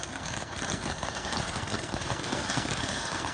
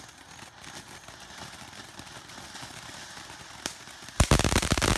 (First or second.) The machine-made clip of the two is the first